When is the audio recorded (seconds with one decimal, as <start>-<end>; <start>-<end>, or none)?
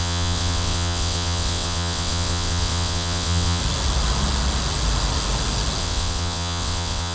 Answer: 3.6-5.8